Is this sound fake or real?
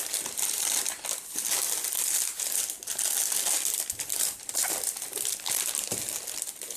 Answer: real